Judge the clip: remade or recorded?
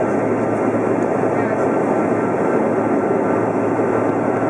recorded